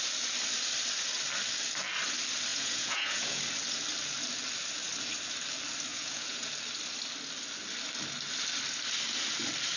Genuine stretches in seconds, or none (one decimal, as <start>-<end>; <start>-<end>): 0.0-2.5; 3.4-5.9; 6.5-9.8

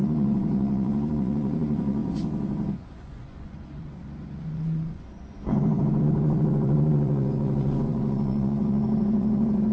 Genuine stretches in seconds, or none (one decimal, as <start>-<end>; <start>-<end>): none

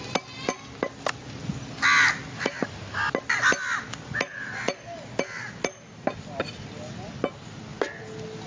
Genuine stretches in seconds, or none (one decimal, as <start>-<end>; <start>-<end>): 0.0-8.5

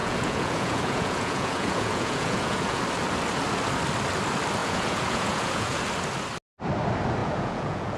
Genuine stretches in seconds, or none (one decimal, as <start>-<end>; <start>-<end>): 2.8-4.6; 5.8-7.2

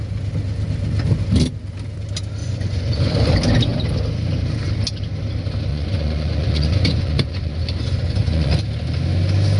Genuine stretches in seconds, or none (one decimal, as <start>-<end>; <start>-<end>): 0.0-2.4; 3.3-5.7; 8.6-9.6